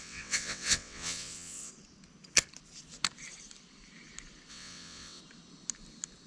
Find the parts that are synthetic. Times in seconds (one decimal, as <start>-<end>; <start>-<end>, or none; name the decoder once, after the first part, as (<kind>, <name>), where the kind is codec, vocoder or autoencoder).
0.0-1.7 (vocoder, WaveNeXt); 4.5-5.2